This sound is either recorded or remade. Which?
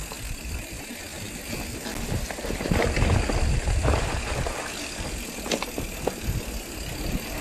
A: recorded